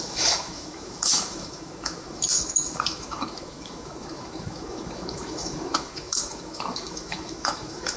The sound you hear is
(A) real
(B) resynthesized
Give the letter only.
B